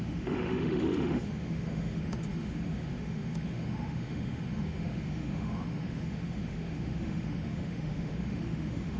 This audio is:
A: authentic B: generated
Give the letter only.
B